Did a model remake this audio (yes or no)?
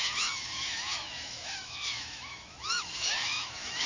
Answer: yes